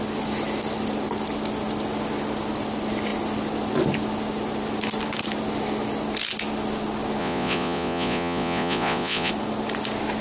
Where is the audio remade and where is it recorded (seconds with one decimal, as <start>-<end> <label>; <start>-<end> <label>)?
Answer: 0.0-7.2 recorded; 7.2-9.3 remade; 9.3-10.2 recorded